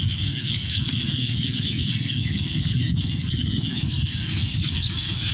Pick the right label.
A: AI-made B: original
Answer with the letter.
A